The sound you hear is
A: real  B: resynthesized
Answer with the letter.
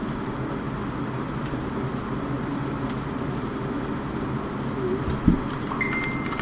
A